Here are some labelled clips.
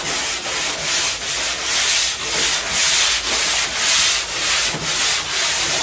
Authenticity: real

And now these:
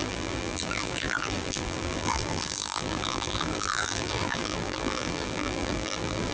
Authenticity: fake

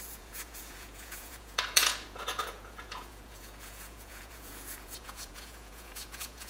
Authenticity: fake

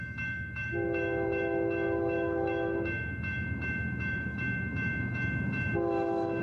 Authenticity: fake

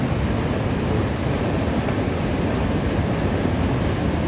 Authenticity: real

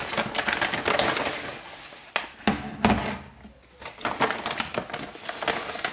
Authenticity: real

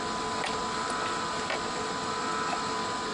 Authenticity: real